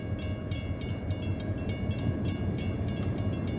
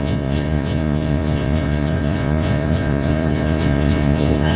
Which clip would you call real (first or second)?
first